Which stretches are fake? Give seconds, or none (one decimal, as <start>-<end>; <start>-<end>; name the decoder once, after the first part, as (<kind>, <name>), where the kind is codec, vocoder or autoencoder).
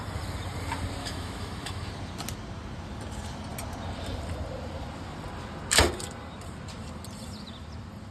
1.0-1.9 (autoencoder, DAC-VAE)